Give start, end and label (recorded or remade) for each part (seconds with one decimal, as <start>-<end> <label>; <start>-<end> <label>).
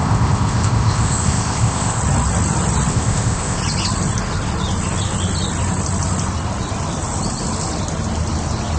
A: 0.0-2.0 remade; 2.0-2.9 recorded; 2.9-3.6 remade; 3.6-8.8 recorded